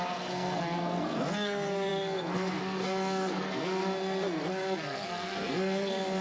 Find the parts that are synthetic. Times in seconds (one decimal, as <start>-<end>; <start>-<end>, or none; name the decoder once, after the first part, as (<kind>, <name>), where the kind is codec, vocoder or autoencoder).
0.0-6.2 (codec, SNAC)